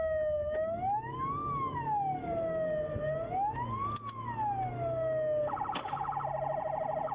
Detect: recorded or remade recorded